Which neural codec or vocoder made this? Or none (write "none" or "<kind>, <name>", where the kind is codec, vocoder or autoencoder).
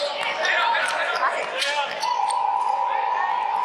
none